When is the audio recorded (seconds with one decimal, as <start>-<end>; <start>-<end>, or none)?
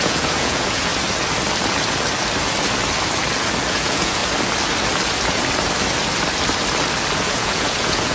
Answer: 0.9-3.7; 4.2-7.3